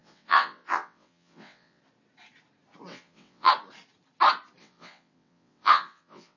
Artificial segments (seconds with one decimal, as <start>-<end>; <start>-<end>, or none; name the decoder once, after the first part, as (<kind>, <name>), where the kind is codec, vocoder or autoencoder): 0.0-1.8 (vocoder, WaveNeXt); 2.9-3.5; 4.6-6.4